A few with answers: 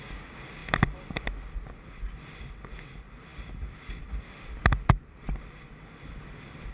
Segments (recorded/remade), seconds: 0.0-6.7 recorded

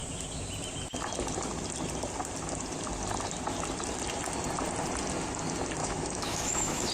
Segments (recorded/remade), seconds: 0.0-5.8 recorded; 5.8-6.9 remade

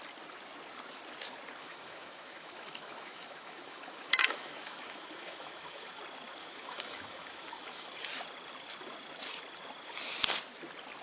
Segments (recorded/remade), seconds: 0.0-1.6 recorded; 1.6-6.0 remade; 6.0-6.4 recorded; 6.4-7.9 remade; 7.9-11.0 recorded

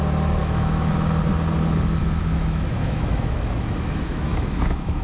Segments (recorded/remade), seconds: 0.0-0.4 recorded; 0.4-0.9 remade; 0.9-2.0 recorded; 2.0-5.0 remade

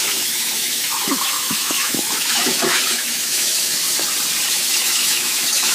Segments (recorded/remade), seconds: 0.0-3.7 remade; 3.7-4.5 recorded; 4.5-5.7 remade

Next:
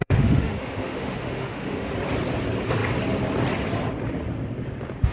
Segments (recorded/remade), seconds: 0.0-1.9 remade; 1.9-5.1 recorded